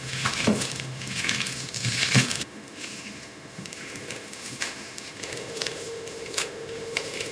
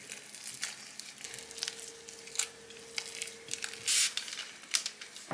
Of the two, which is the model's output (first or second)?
first